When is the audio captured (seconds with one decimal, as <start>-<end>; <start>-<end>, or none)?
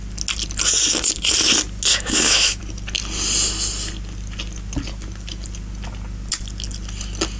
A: 0.0-1.9; 2.6-7.4